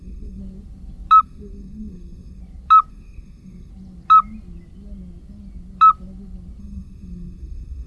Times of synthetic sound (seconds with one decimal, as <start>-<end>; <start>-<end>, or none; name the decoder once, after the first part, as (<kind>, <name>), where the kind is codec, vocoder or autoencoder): 0.0-0.4 (codec, SNAC); 1.2-2.4; 2.9-3.7; 6.6-7.9